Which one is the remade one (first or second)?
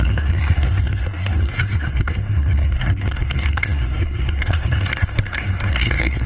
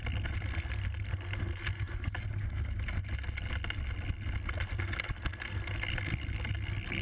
first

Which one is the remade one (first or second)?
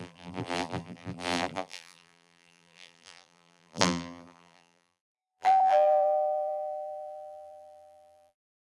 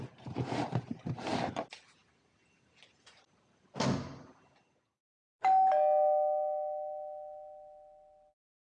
first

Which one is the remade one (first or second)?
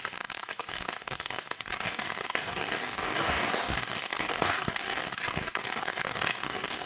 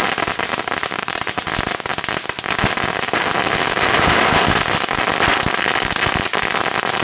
first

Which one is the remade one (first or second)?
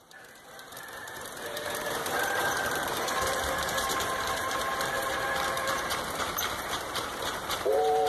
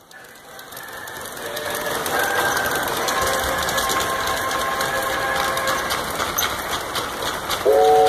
first